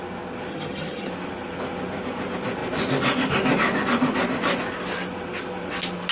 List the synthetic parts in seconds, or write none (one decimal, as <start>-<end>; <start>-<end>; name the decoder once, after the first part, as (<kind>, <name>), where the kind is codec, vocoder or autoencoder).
0.5-1.1 (vocoder, HiFi-GAN)